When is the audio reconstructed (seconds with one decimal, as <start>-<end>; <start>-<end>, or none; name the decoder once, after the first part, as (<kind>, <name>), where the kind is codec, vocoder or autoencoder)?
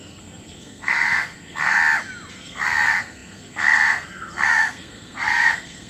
0.0-1.8 (codec, SNAC); 2.3-5.9